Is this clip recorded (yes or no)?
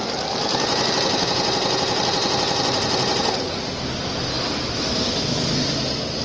yes